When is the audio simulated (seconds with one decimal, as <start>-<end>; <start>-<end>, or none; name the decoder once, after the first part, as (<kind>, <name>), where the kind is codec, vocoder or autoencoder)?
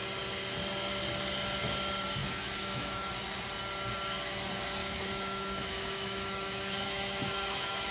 2.2-3.1 (autoencoder, DAC-VAE); 4.8-7.9